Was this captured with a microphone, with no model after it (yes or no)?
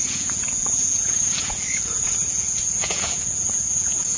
no